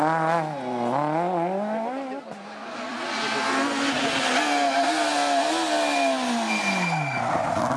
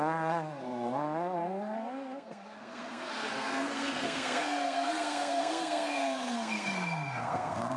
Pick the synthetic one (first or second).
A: second